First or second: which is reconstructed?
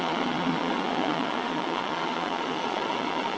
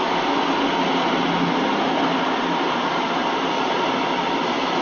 first